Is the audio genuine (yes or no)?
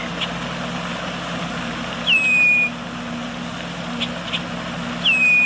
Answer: yes